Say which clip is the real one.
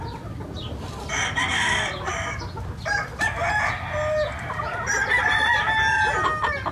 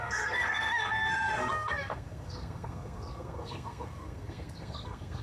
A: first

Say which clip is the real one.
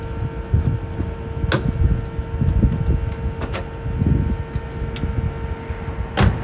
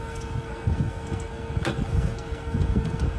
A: first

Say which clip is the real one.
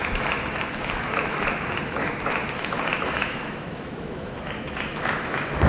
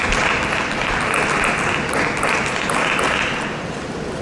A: second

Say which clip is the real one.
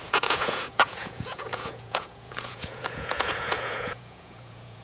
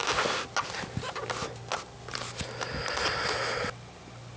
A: second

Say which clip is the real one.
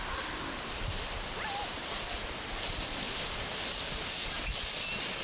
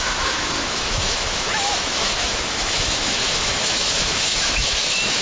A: first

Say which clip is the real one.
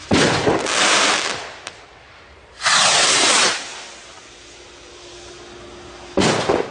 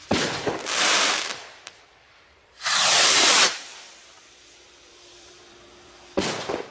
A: first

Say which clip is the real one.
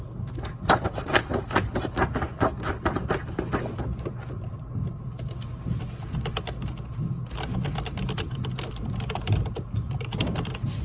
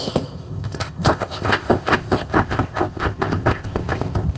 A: first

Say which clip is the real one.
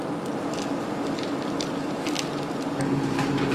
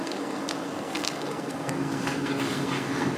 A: first